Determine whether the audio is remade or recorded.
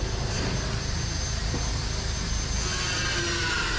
recorded